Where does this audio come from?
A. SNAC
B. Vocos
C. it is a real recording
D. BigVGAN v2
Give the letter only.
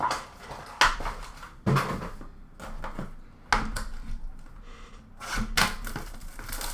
C